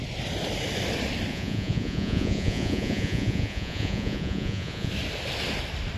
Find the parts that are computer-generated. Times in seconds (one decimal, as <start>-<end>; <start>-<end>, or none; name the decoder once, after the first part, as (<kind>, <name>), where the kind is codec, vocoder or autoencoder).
1.3-4.9 (vocoder, Vocos)

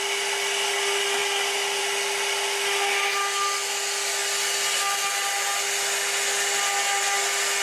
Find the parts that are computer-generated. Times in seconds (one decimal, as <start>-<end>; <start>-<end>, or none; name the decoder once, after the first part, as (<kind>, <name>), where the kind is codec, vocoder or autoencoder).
none

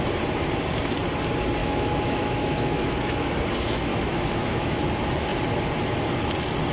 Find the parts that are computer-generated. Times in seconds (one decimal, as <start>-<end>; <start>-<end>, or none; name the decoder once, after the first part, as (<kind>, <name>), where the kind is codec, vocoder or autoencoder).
1.6-3.3 (autoencoder, DAC-VAE); 3.9-4.8

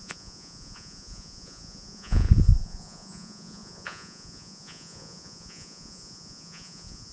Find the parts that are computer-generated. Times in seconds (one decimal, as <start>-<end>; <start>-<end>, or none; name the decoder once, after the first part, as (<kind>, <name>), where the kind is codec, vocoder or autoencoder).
0.0-7.1 (vocoder, Vocos)

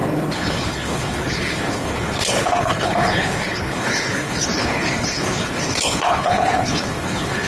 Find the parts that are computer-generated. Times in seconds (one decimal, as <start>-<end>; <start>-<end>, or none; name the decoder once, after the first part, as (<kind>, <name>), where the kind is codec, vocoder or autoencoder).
0.0-7.5 (codec, HILCodec)

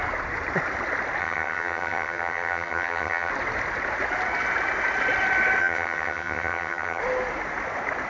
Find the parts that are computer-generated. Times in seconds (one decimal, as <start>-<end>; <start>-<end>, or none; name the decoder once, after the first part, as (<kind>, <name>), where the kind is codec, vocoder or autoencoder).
1.2-3.3 (vocoder, HiFi-GAN); 5.6-7.0